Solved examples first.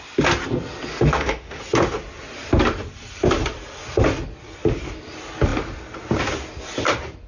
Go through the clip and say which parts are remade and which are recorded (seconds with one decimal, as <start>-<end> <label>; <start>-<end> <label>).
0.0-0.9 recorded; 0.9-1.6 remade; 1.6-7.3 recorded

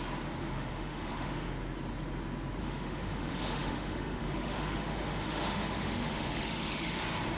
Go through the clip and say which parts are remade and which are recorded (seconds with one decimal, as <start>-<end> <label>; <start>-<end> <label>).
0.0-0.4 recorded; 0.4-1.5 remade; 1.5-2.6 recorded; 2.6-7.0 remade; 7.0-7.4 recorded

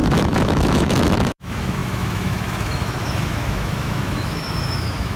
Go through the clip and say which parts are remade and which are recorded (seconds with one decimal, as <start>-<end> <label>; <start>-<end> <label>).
0.0-5.2 remade

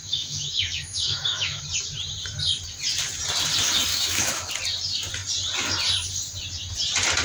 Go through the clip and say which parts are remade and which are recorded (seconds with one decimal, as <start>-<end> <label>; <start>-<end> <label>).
0.0-1.6 remade; 1.6-3.9 recorded; 3.9-4.5 remade; 4.5-7.2 recorded

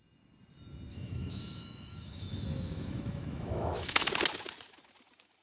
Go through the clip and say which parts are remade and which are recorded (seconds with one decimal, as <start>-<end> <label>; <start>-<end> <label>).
0.0-0.9 recorded; 0.9-4.1 remade; 4.1-5.4 recorded

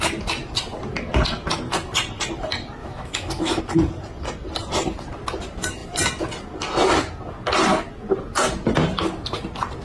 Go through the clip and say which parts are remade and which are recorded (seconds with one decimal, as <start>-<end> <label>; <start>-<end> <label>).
0.0-2.8 recorded; 2.8-3.6 remade; 3.6-9.8 recorded

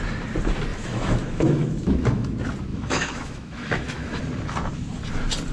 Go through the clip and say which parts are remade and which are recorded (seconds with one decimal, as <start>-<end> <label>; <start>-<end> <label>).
0.0-0.7 recorded; 0.7-2.3 remade; 2.3-2.7 recorded; 2.7-4.2 remade; 4.2-5.5 recorded

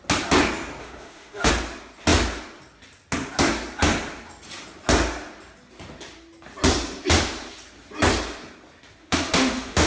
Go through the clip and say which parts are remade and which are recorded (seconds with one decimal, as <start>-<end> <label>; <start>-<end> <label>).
0.0-0.8 recorded; 0.8-1.5 remade; 1.5-9.0 recorded; 9.0-9.9 remade